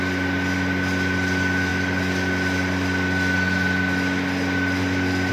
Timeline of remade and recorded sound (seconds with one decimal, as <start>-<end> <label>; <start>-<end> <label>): 0.0-5.3 recorded